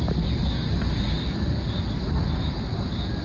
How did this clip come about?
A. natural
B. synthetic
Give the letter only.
A